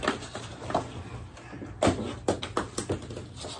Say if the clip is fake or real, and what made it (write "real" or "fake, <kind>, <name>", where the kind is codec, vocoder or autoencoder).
real